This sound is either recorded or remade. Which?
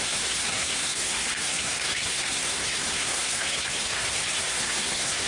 remade